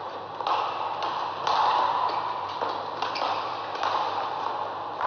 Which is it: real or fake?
real